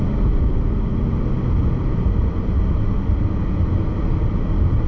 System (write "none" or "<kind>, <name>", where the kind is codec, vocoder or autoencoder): none